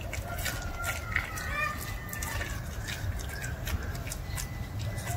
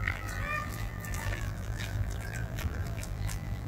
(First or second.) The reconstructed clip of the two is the second